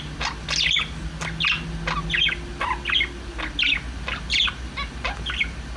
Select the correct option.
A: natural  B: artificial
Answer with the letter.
A